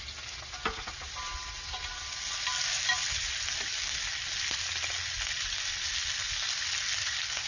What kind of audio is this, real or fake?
real